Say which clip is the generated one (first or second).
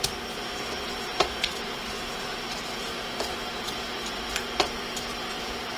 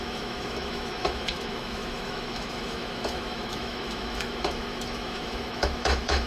second